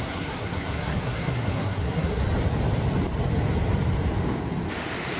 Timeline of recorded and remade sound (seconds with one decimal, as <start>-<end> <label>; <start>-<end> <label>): 0.0-2.2 remade; 2.2-5.2 recorded